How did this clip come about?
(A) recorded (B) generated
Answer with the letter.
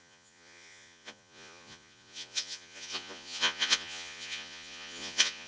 B